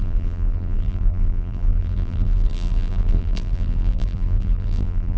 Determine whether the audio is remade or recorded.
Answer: remade